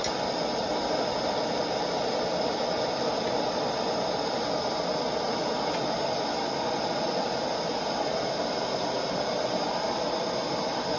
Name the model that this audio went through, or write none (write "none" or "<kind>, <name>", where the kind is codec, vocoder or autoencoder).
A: none